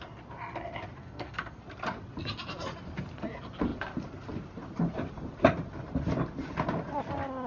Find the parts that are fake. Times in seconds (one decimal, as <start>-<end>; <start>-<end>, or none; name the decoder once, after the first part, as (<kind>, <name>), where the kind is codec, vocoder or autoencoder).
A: 1.0-1.6 (codec, SNAC)